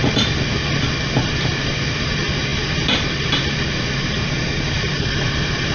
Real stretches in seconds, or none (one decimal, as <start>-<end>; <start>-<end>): 0.0-1.2